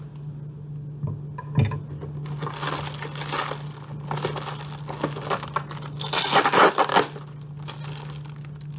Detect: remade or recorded recorded